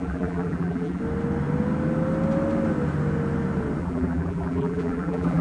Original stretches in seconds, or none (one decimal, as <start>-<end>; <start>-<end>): 1.0-3.8